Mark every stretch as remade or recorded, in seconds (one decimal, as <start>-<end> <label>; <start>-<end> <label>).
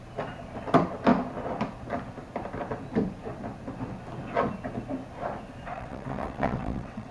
0.0-5.7 recorded; 5.7-7.1 remade